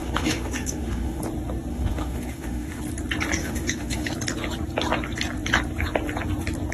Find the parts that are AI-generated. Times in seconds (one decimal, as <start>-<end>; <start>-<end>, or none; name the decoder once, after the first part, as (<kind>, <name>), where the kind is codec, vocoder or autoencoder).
0.0-1.2 (autoencoder, DAC-VAE); 1.7-2.8; 3.4-4.1